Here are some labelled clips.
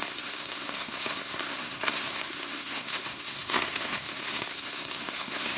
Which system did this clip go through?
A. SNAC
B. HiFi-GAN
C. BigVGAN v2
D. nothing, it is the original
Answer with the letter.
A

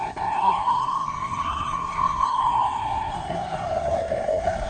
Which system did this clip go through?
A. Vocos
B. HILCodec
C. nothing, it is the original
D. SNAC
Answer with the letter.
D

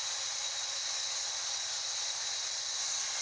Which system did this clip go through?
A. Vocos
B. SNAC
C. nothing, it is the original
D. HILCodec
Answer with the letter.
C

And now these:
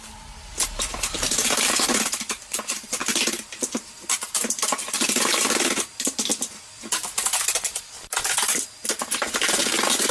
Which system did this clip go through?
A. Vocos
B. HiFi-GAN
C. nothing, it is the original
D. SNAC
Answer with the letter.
C